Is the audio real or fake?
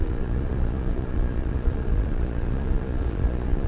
fake